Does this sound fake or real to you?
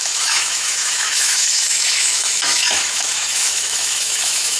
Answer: fake